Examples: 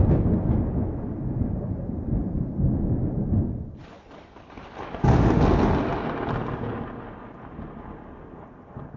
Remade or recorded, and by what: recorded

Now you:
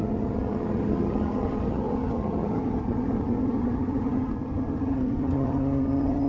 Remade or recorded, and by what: remade, vocoder, HiFi-GAN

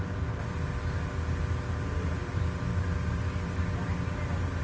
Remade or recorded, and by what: recorded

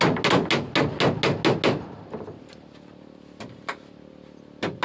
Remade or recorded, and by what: recorded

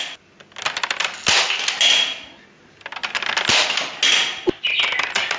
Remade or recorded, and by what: recorded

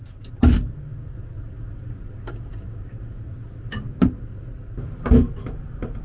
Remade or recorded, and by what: recorded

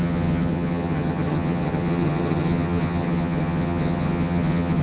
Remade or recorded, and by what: remade, vocoder, HiFi-GAN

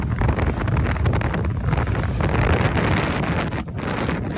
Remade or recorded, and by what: recorded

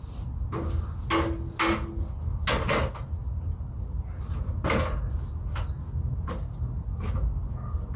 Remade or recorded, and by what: recorded